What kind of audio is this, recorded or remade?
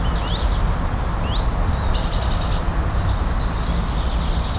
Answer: recorded